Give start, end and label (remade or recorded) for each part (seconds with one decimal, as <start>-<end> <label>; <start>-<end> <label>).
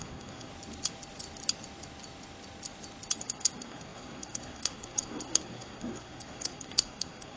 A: 0.0-0.5 remade; 0.5-3.2 recorded; 3.2-7.4 remade